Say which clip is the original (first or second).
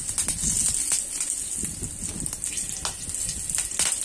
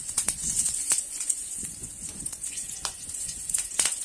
first